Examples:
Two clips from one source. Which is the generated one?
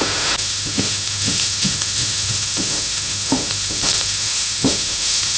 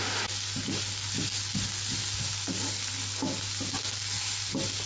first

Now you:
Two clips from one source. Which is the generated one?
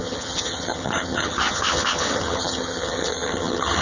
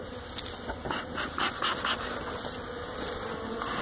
first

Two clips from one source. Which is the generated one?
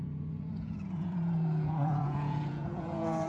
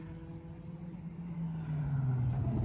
first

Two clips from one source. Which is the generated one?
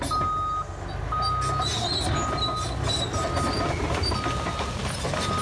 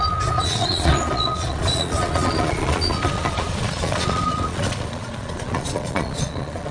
second